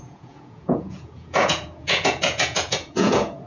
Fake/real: fake